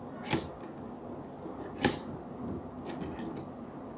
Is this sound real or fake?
real